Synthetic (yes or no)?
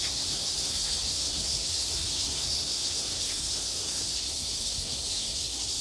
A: yes